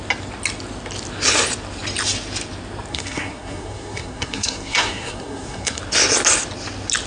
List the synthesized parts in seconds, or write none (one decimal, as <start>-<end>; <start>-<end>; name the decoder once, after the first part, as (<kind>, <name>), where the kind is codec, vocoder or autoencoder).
2.9-5.8 (codec, SNAC)